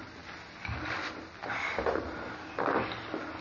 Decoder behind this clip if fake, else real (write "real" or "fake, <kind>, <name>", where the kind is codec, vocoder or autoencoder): real